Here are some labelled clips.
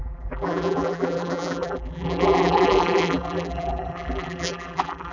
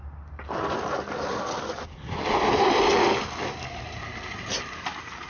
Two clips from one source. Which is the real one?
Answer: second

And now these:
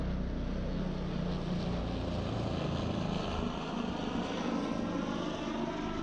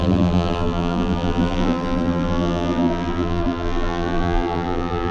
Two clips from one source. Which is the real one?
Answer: first